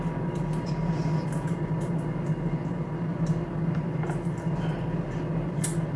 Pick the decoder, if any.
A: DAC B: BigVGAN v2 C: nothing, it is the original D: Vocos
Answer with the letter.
C